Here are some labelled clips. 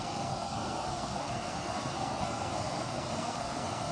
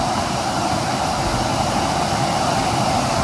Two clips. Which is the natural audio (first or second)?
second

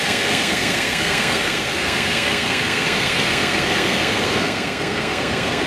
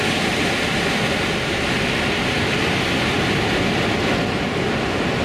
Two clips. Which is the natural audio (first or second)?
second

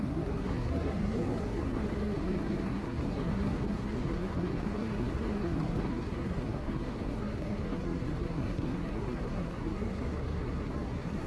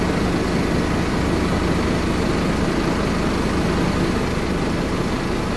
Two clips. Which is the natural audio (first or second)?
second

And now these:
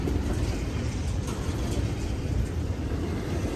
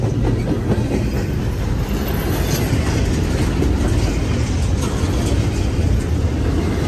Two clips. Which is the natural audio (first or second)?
second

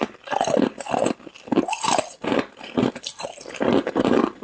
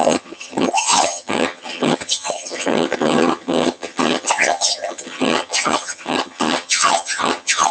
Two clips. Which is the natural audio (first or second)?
first